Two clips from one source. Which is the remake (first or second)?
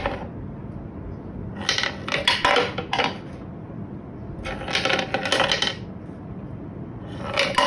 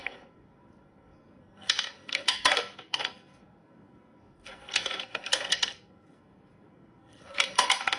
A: second